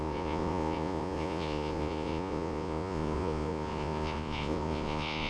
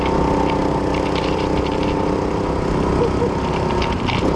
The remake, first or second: first